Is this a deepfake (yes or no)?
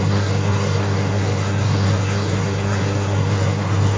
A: yes